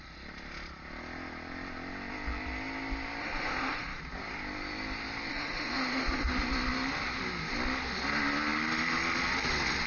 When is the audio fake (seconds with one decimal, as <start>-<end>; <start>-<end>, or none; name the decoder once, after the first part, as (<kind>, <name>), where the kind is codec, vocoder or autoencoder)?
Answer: 3.2-4.0 (autoencoder, DAC-VAE); 5.3-6.3